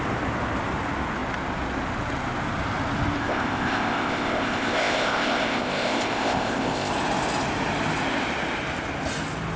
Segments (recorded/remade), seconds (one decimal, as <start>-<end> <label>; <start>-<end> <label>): 0.0-3.2 recorded; 3.2-6.9 remade; 6.9-9.6 recorded